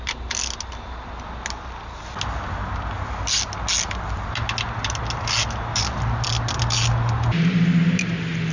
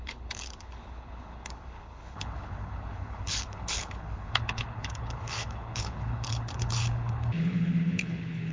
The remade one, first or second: second